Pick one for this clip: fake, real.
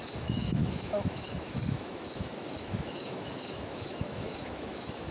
fake